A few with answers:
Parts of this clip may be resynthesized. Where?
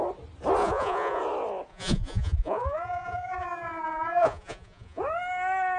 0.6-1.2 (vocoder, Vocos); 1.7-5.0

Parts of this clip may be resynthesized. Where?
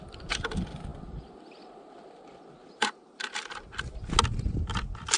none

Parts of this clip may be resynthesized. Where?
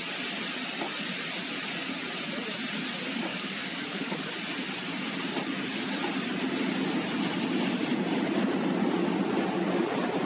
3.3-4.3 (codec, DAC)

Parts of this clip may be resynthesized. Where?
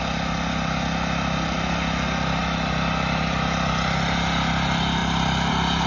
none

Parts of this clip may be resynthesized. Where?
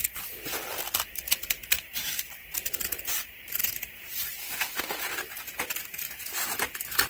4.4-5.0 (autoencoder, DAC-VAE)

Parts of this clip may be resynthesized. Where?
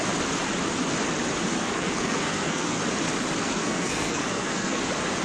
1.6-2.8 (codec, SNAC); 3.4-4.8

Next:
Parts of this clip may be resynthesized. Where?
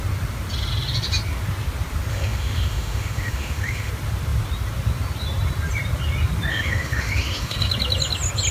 2.1-3.9 (autoencoder, DAC-VAE); 6.5-7.7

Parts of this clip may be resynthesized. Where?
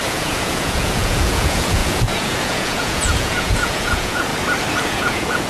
0.0-4.3 (vocoder, Vocos); 4.8-5.5